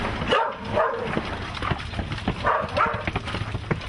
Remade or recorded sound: recorded